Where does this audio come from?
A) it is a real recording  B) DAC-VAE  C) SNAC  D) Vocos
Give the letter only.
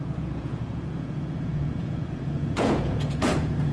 D